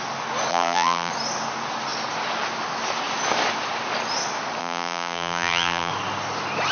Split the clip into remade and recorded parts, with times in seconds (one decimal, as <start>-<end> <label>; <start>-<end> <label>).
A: 0.0-0.5 recorded; 0.5-1.1 remade; 1.1-4.6 recorded; 4.6-5.9 remade; 5.9-6.7 recorded